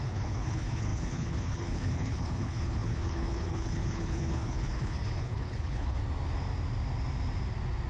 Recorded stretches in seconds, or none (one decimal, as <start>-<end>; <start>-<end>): 6.0-7.9